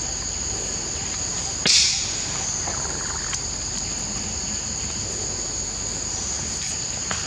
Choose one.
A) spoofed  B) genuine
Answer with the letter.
B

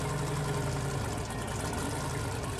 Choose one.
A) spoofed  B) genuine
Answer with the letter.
B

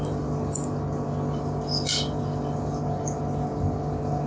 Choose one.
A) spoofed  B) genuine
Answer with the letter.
B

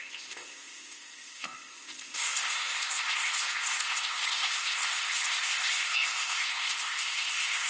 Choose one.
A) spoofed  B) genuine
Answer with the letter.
A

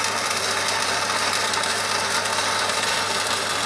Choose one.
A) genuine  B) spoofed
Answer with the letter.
B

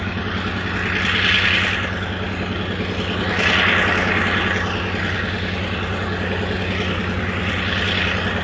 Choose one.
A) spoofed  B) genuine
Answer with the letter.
B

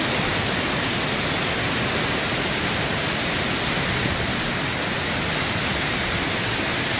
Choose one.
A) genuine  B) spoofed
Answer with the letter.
A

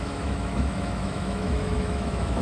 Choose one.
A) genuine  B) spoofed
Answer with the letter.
B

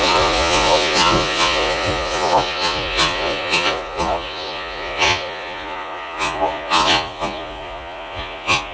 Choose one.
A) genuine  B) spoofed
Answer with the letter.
B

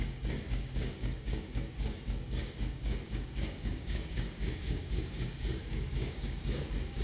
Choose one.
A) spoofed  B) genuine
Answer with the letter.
A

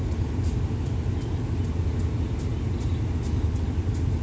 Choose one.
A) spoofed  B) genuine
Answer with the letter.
B